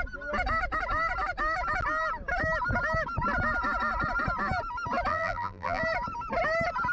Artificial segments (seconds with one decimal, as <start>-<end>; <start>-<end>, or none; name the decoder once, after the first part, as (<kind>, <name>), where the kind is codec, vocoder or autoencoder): 5.1-5.8 (vocoder, BigVGAN v2)

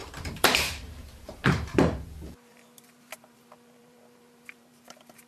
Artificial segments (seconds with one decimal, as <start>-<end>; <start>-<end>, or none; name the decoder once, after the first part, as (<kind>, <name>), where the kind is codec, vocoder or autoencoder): 0.0-5.3 (vocoder, BigVGAN v2)

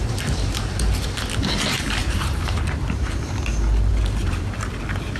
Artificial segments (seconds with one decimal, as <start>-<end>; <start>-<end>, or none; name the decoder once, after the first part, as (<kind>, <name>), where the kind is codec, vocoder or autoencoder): 2.0-3.3 (vocoder, BigVGAN v2); 3.9-4.8

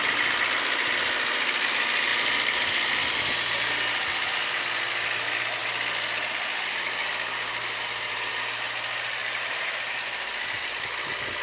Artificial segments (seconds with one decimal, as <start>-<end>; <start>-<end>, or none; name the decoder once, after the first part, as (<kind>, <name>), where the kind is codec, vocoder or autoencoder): 9.2-9.7 (vocoder, BigVGAN v2)